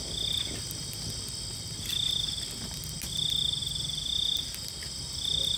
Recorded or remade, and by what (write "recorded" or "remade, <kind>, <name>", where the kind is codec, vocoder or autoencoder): recorded